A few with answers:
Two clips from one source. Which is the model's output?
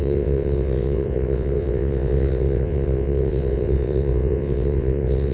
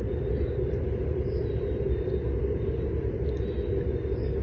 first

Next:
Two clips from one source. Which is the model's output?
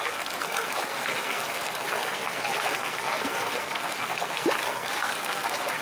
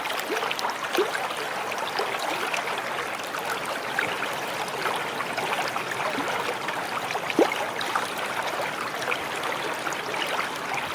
first